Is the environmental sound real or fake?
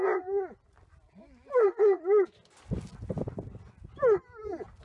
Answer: real